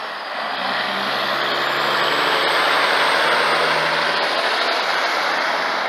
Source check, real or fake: real